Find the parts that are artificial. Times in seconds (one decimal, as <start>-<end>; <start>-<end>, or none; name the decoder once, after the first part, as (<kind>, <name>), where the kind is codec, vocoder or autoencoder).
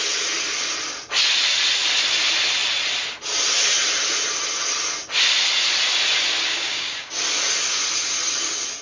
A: 6.5-7.1 (codec, DAC)